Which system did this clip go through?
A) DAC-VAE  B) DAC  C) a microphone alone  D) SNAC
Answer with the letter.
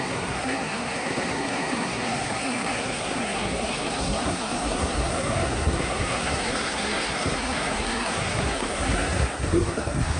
D